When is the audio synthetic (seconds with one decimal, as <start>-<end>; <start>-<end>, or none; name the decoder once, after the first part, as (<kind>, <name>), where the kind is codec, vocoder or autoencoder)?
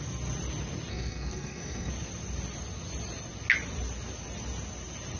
0.9-1.9 (codec, SNAC)